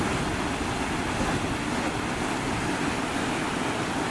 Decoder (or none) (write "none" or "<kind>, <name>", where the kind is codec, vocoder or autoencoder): none